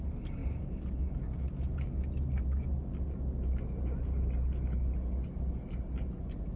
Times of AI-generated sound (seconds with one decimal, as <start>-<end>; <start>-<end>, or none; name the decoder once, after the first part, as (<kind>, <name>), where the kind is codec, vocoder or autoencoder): none